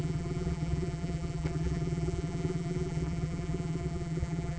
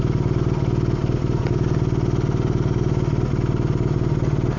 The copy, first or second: first